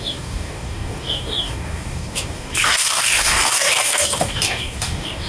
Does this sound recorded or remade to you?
remade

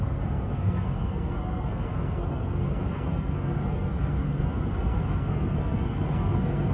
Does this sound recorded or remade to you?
remade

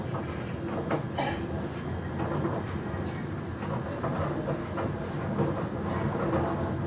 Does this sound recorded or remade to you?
recorded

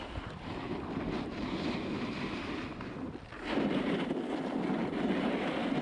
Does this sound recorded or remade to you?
recorded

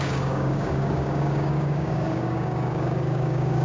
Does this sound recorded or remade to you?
remade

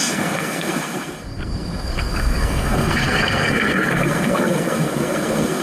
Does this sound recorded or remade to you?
remade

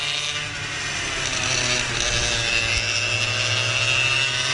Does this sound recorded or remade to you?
recorded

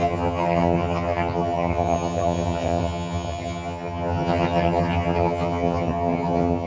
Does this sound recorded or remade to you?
remade